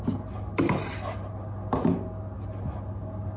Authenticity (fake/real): real